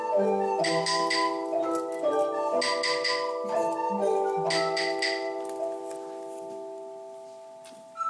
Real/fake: real